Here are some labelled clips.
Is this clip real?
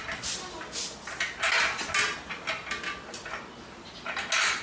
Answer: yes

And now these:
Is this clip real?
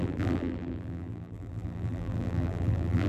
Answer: no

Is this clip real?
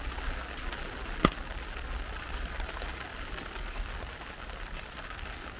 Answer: yes